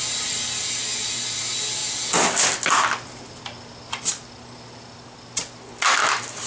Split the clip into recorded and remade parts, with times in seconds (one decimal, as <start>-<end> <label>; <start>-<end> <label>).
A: 0.0-6.5 recorded